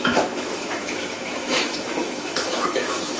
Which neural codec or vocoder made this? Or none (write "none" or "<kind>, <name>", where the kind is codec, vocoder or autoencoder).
autoencoder, DAC-VAE